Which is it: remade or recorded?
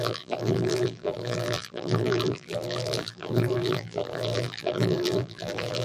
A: remade